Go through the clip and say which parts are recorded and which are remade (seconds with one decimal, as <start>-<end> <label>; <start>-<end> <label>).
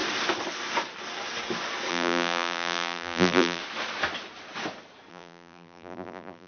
0.0-1.9 recorded; 1.9-3.6 remade; 3.6-5.1 recorded; 5.1-6.5 remade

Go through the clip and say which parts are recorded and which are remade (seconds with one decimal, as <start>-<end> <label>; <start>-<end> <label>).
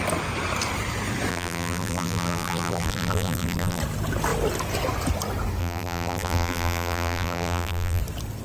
0.0-1.3 recorded; 1.3-3.8 remade; 3.8-5.6 recorded; 5.6-8.0 remade; 8.0-8.4 recorded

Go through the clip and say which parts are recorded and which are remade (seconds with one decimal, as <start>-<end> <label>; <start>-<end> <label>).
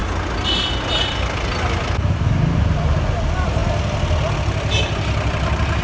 0.0-5.8 recorded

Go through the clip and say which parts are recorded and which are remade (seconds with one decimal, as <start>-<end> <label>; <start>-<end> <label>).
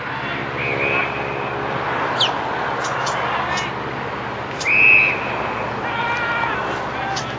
0.0-7.4 recorded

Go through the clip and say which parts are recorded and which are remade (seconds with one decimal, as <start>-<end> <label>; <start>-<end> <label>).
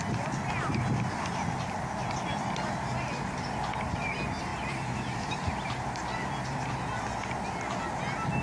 0.0-2.0 recorded; 2.0-3.0 remade; 3.0-4.5 recorded; 4.5-6.7 remade; 6.7-8.4 recorded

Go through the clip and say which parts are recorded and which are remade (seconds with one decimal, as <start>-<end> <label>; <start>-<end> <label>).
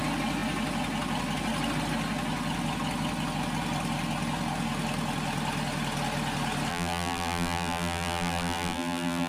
0.0-6.7 recorded; 6.7-9.3 remade